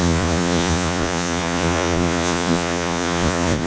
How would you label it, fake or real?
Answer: fake